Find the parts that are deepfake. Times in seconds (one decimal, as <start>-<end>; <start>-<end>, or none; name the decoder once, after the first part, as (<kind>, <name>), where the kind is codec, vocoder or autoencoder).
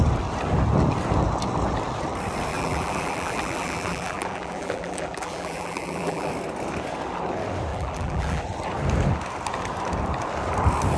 2.5-6.3 (vocoder, BigVGAN v2); 7.7-8.4